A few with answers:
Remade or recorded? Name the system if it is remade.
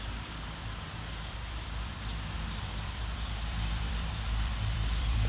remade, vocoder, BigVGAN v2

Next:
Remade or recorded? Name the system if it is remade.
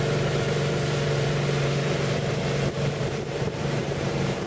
remade, vocoder, BigVGAN v2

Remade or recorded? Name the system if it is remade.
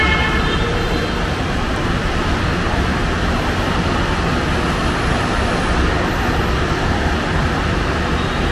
recorded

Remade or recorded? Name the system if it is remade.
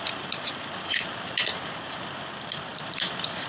remade, vocoder, BigVGAN v2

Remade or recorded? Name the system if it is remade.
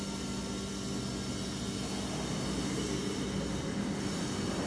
recorded